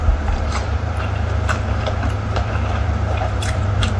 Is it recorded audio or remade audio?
remade